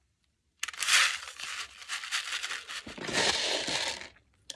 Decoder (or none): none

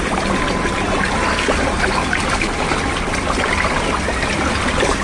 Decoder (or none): none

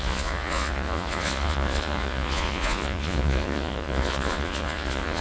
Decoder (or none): vocoder, Vocos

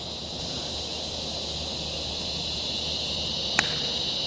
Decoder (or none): none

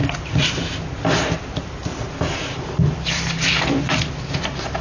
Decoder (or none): vocoder, BigVGAN v2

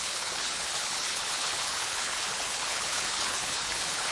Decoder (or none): codec, HILCodec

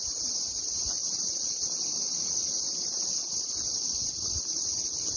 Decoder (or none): none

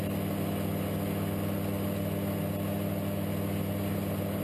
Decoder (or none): none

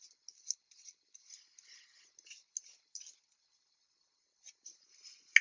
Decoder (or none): none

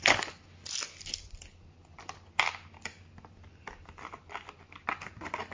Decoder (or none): none